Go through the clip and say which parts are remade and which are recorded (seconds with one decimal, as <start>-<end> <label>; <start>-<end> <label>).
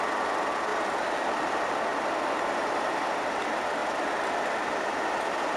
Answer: 0.0-5.6 recorded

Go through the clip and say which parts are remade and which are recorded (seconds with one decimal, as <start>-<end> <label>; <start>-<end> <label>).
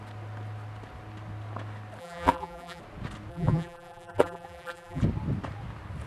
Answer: 0.0-2.0 recorded; 2.0-2.8 remade; 2.8-3.3 recorded; 3.3-5.0 remade; 5.0-6.1 recorded